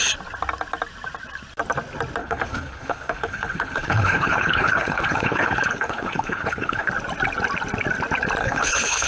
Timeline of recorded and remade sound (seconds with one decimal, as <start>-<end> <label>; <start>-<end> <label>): 0.0-2.2 recorded; 2.2-6.9 remade; 6.9-8.4 recorded; 8.4-9.1 remade